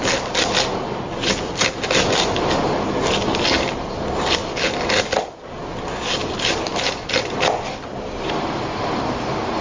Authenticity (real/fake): real